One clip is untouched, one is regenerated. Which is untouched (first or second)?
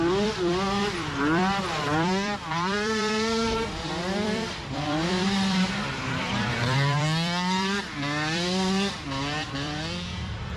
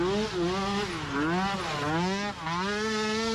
second